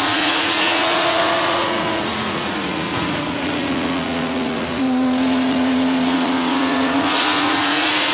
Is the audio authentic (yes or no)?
no